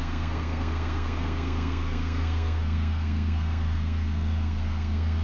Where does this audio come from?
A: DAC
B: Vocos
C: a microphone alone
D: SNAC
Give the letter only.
D